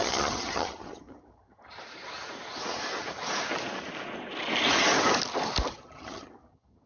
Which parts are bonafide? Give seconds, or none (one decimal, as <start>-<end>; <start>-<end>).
1.6-5.7